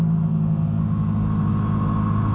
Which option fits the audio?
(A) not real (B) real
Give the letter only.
B